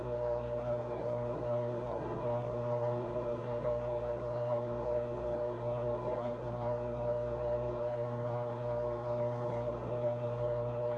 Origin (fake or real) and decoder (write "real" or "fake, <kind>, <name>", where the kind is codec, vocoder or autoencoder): fake, codec, SNAC